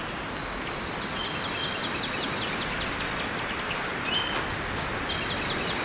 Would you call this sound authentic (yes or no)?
yes